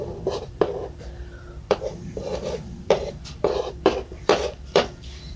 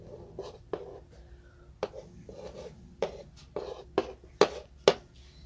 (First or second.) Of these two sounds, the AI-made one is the first